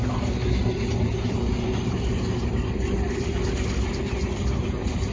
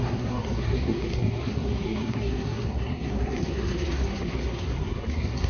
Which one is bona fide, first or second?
first